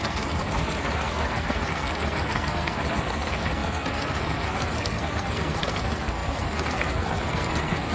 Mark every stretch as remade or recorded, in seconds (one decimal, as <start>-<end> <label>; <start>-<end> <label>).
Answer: 0.0-7.9 remade